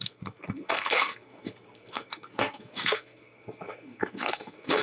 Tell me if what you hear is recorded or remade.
remade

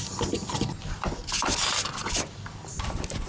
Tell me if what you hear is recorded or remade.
recorded